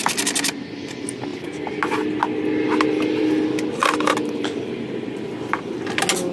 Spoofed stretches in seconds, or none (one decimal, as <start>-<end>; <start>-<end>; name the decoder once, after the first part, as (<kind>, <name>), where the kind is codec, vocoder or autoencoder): none